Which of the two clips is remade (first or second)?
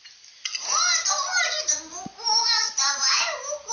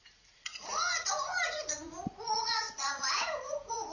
second